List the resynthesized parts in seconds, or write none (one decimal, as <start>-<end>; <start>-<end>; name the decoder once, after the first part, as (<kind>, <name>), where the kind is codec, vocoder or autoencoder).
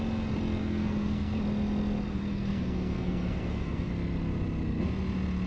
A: 0.6-1.4 (codec, SNAC); 2.1-3.9